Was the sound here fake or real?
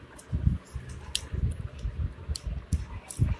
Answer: real